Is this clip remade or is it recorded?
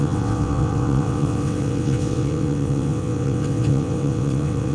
remade